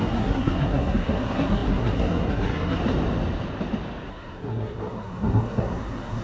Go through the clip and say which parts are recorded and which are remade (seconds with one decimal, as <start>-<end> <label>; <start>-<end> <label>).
0.0-2.8 remade; 2.8-4.1 recorded; 4.1-6.2 remade